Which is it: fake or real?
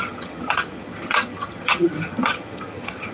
fake